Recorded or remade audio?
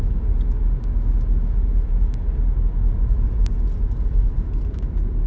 recorded